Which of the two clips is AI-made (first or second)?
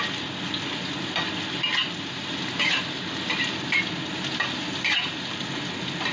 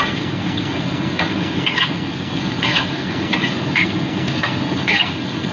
second